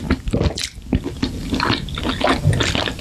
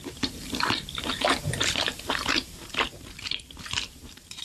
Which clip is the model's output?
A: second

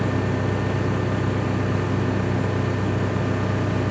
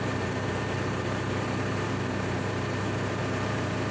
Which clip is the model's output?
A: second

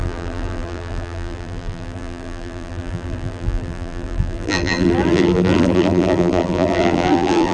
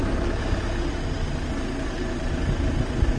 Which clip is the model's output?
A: first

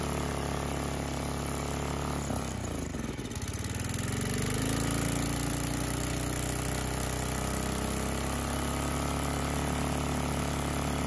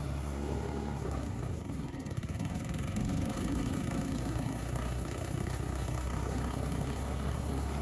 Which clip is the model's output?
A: second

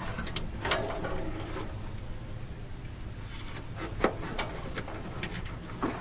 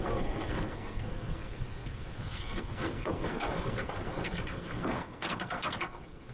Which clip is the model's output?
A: second